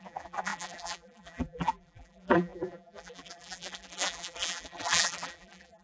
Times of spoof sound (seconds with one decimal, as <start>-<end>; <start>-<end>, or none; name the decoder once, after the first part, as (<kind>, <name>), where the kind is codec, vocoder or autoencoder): 0.0-5.8 (vocoder, BigVGAN v2)